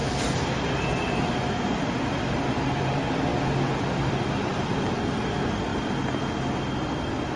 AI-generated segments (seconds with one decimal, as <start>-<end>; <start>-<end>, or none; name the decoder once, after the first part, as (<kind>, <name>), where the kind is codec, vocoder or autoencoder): 3.3-5.1 (vocoder, BigVGAN v2)